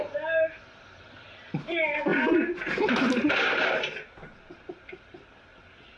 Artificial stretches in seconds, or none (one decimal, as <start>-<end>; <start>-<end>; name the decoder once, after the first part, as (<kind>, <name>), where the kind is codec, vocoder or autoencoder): none